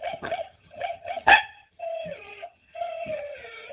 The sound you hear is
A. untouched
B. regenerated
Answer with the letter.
B